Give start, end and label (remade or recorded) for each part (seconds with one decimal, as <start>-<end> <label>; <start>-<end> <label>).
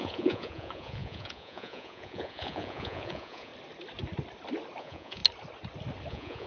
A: 0.0-3.5 remade; 3.5-4.8 recorded; 4.8-5.2 remade; 5.2-6.1 recorded; 6.1-6.5 remade